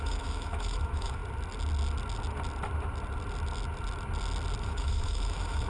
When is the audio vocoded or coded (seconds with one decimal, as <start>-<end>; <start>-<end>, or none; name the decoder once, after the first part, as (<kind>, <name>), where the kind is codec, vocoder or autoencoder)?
0.0-1.2 (autoencoder, DAC-VAE); 4.6-5.7